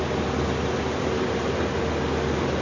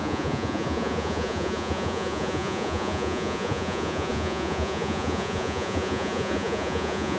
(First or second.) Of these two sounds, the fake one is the second